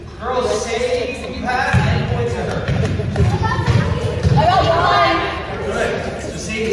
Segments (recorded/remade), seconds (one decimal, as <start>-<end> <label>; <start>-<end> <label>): 0.0-1.1 recorded; 1.1-1.7 remade; 1.7-2.4 recorded; 2.4-3.8 remade; 3.8-4.3 recorded; 4.3-4.8 remade; 4.8-6.7 recorded